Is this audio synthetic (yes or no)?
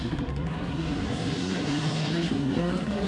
yes